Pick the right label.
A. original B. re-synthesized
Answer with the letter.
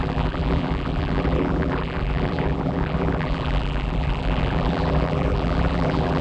B